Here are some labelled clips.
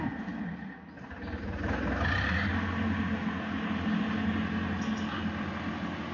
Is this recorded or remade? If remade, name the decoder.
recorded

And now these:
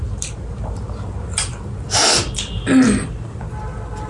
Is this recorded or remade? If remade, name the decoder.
recorded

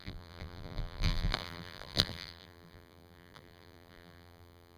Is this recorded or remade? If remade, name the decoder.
remade, vocoder, BigVGAN v2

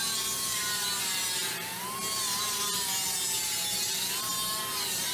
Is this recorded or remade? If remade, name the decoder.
recorded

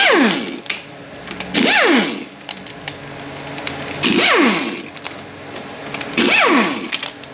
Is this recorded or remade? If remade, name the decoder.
recorded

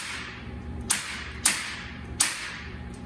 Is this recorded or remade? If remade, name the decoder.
remade, vocoder, BigVGAN v2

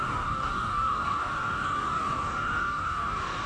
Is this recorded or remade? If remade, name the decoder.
remade, codec, DAC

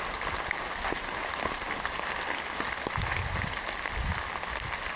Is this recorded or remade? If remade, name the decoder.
recorded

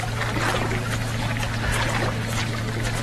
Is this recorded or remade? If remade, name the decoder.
recorded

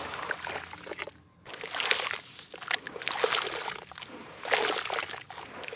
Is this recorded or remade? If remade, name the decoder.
recorded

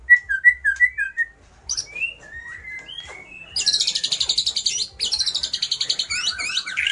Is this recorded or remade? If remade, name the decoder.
recorded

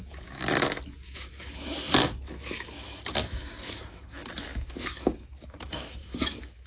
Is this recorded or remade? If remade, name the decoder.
remade, autoencoder, DAC-VAE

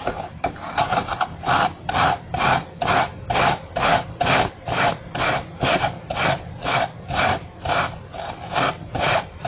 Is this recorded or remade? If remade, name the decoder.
recorded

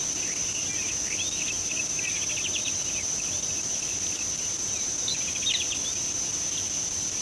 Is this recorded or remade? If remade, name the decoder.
recorded